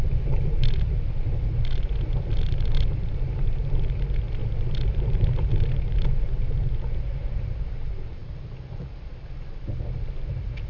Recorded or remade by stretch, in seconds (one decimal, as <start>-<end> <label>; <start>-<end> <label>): 0.0-10.7 recorded